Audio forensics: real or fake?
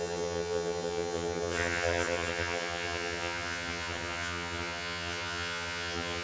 fake